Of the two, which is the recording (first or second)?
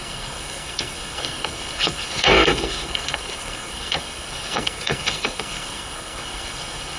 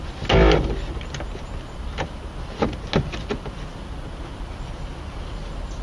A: second